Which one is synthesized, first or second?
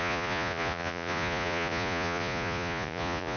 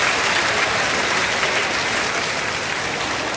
first